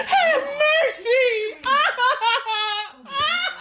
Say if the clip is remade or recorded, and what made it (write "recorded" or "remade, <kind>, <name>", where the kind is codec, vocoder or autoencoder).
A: recorded